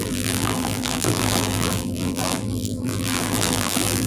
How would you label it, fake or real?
fake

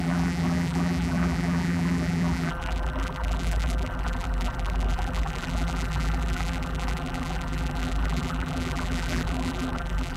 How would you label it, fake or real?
fake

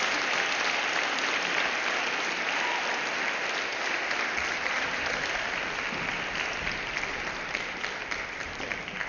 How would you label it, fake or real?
fake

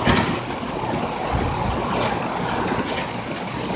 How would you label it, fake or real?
real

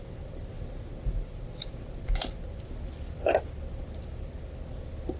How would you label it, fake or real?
real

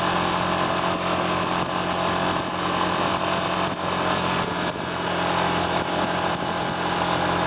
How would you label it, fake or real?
real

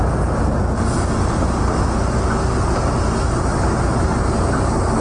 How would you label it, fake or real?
real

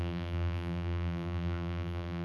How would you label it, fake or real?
fake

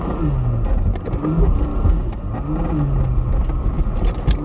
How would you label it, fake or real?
real